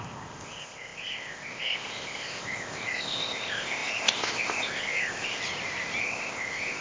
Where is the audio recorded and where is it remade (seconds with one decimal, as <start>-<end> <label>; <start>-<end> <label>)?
0.0-5.4 remade; 5.4-6.0 recorded; 6.0-6.8 remade